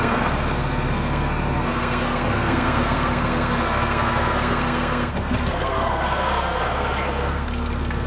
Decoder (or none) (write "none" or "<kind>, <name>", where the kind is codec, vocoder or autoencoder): codec, SNAC